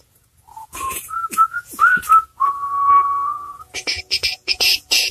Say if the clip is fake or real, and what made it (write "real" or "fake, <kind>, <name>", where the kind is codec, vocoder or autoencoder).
fake, vocoder, Vocos